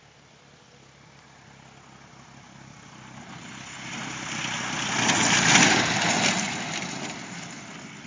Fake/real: real